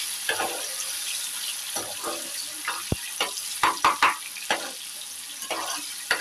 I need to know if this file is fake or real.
real